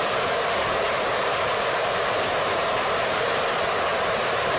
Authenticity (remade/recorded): remade